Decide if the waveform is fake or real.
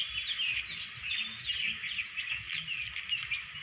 real